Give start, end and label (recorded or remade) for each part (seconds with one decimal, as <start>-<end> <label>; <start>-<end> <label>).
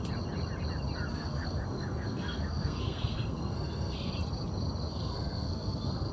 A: 0.0-1.1 recorded; 1.1-4.1 remade; 4.1-4.9 recorded; 4.9-6.1 remade